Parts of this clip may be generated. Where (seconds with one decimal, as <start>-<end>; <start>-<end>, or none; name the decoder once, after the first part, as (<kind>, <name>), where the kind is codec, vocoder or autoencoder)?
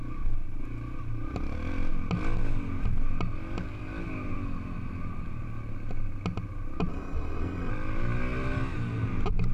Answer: 6.9-7.7 (codec, SNAC)